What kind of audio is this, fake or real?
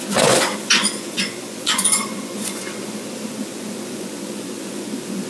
fake